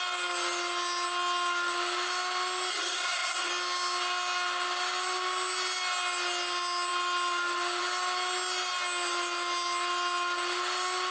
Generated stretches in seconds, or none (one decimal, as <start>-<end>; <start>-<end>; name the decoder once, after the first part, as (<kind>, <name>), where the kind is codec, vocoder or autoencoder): 2.7-3.5 (codec, SNAC)